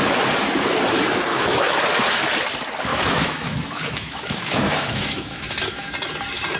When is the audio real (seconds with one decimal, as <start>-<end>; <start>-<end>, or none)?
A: 0.0-1.3; 1.8-2.9; 5.9-6.6